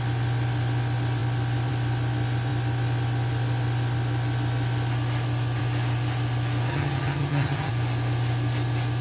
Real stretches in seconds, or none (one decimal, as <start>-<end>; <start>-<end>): 0.0-6.7; 7.7-9.0